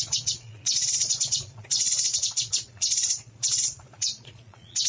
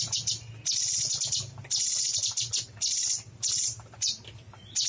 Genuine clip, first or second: second